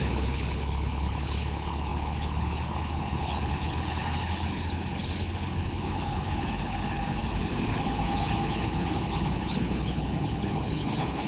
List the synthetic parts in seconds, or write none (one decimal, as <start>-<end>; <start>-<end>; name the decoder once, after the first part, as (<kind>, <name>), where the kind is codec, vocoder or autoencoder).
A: 0.0-11.3 (codec, HILCodec)